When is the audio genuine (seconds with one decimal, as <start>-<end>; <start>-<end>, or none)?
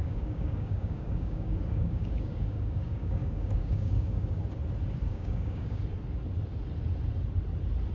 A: 4.4-5.1; 5.8-7.9